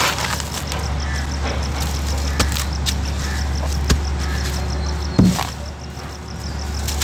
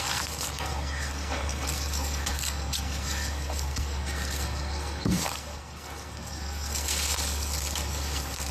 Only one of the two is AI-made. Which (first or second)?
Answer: second